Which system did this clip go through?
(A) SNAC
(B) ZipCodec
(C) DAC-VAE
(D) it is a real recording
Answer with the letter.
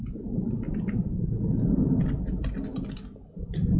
D